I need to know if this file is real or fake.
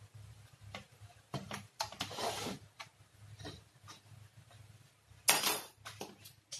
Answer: real